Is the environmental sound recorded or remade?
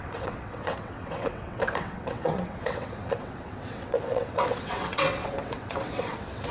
remade